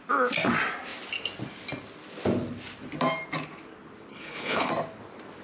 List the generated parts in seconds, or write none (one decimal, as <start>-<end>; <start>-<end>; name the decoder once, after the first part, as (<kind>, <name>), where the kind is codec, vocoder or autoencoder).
4.1-4.7 (codec, HILCodec)